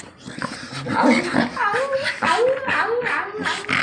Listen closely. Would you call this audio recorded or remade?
recorded